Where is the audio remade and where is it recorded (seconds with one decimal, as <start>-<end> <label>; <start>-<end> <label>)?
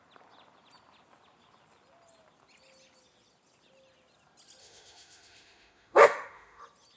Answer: 0.0-4.6 recorded; 4.6-6.6 remade; 6.6-7.0 recorded